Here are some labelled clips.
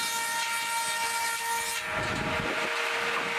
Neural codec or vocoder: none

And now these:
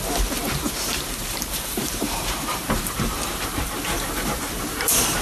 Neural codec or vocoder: vocoder, BigVGAN v2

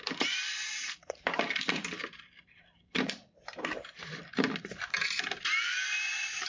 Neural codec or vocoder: vocoder, BigVGAN v2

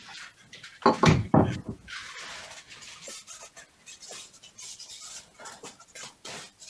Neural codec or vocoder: none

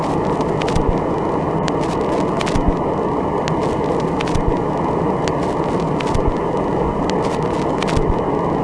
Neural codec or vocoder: none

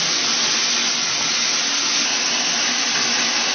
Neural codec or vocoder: none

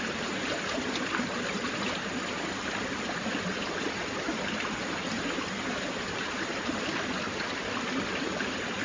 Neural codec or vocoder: none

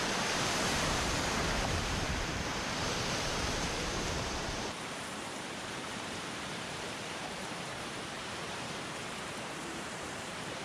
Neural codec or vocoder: vocoder, BigVGAN v2